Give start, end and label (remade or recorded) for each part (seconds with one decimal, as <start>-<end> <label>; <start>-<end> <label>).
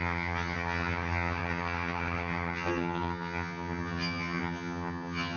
0.0-5.4 remade